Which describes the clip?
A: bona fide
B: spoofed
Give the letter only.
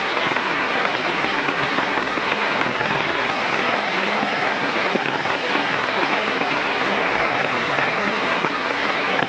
B